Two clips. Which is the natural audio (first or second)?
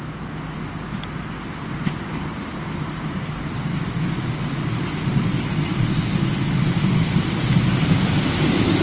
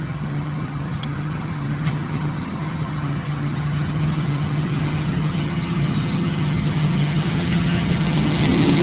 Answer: first